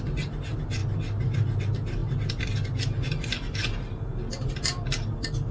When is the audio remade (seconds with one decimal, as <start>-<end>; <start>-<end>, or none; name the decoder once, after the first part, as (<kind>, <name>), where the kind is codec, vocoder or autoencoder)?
none